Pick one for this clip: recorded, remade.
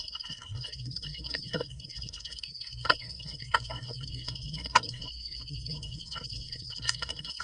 remade